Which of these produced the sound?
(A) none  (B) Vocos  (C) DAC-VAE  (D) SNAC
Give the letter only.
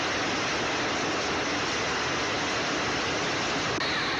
A